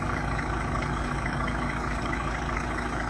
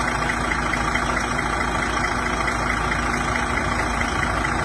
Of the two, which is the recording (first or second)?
second